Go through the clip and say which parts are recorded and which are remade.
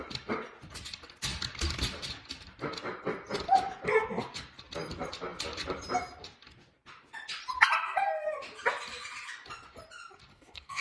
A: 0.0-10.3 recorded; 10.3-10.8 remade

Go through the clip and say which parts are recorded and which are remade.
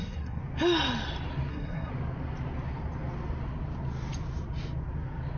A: 0.0-0.4 remade; 0.4-1.5 recorded; 1.5-1.9 remade; 1.9-5.4 recorded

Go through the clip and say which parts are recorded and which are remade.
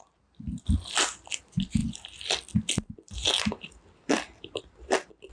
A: 0.0-5.3 recorded